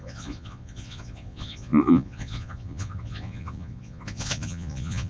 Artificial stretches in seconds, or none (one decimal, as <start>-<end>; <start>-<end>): 0.0-5.1